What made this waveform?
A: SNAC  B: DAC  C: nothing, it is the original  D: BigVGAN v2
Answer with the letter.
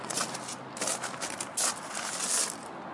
C